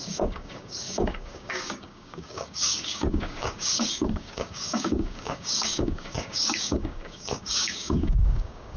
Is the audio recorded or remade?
remade